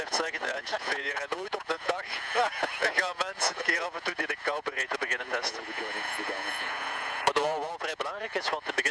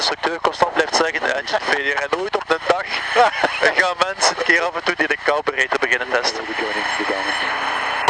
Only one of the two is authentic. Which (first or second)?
second